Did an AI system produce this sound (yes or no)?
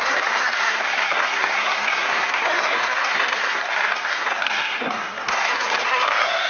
yes